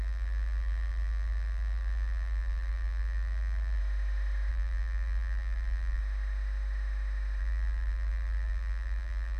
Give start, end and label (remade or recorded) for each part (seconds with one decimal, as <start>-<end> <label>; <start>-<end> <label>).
0.0-3.8 remade; 3.8-4.5 recorded; 4.5-6.0 remade; 6.0-7.4 recorded; 7.4-9.4 remade